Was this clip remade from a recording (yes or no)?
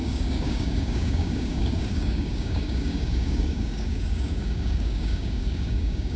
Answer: yes